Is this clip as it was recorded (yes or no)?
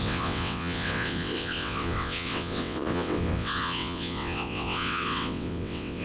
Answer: no